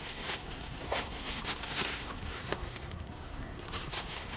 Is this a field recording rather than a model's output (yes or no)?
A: no